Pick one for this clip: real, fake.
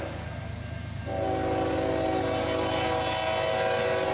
real